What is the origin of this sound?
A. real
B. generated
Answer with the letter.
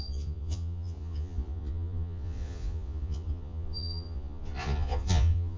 B